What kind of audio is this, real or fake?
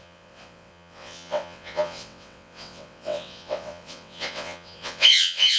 fake